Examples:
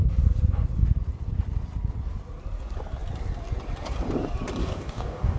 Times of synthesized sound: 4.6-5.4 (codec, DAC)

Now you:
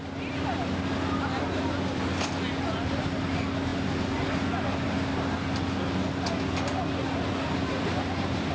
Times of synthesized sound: none

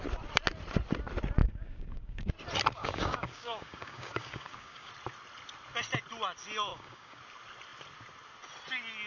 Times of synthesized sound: 1.4-2.3 (codec, DAC); 2.8-4.9; 6.7-7.2